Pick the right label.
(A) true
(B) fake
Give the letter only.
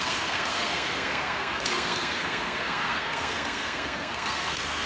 B